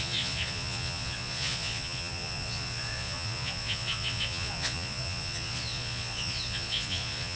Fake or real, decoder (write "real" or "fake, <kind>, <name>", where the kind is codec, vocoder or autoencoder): fake, vocoder, Vocos